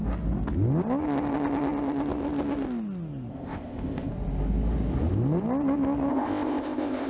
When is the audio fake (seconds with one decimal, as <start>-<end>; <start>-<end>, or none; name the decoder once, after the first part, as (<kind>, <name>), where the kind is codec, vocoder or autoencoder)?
3.3-4.1 (codec, ZipCodec); 6.1-7.1